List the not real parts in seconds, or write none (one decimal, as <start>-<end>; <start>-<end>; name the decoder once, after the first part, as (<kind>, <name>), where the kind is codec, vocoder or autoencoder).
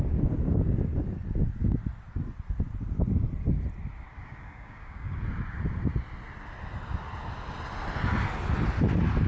4.1-5.2 (codec, DAC)